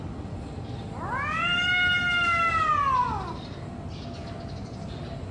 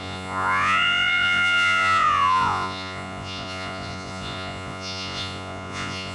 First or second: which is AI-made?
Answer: second